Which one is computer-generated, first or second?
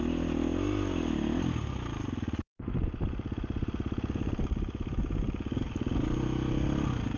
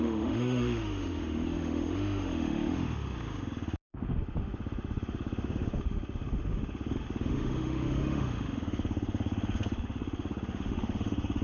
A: second